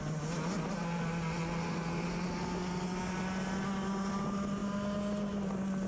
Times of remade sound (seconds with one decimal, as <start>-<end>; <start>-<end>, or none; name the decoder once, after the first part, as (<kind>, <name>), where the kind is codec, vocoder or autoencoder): none